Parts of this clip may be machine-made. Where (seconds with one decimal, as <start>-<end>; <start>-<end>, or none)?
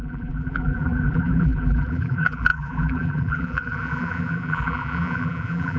0.0-5.8